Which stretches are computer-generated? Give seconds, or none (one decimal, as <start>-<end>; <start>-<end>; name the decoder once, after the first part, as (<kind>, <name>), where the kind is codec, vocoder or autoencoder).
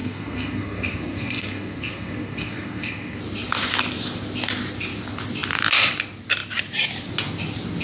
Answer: 0.0-3.2 (codec, SNAC)